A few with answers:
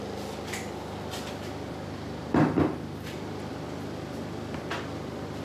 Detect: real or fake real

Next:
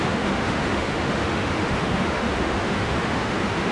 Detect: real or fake fake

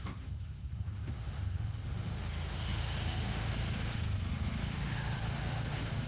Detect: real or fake fake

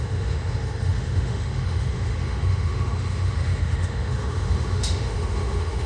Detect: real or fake fake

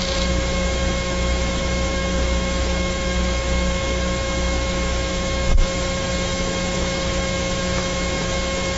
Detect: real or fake fake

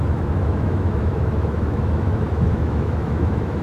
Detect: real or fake fake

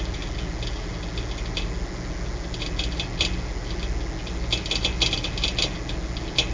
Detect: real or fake real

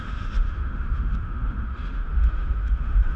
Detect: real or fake fake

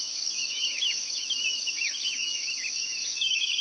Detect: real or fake fake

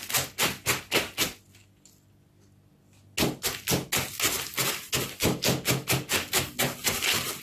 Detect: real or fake real